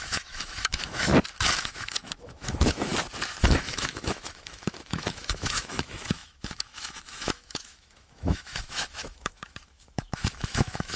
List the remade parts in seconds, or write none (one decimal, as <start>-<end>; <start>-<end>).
0.0-1.1; 1.6-2.9; 3.4-11.0